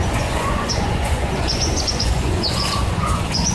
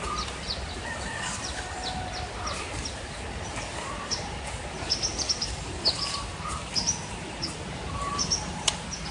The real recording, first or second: second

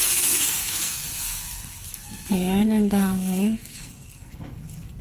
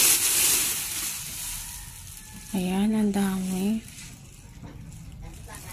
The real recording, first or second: second